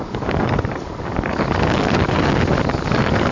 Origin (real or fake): fake